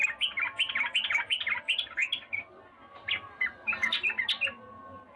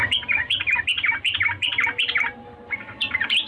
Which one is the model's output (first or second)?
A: second